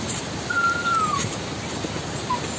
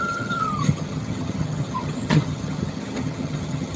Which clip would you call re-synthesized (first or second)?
second